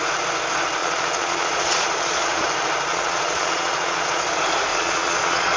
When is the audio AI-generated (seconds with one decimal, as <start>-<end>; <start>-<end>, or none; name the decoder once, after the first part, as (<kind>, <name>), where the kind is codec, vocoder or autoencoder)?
0.8-2.4 (vocoder, Vocos); 2.9-4.3; 4.7-5.6